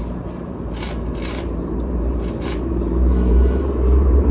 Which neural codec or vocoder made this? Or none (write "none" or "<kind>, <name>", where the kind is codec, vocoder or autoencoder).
vocoder, BigVGAN v2